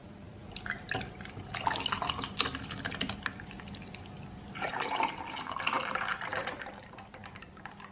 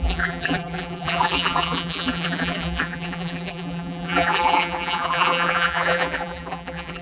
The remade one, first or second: second